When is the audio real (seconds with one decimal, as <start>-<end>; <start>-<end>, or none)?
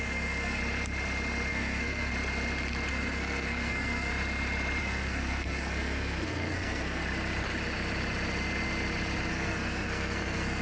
0.6-1.5; 2.1-2.9; 4.1-4.8; 7.0-9.3